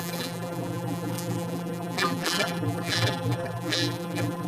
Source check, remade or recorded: remade